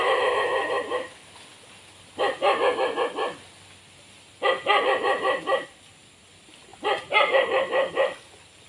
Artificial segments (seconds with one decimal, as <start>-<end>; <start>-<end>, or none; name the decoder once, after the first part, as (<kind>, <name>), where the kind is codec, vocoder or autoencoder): none